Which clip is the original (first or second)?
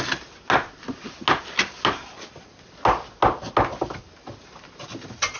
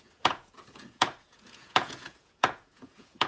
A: first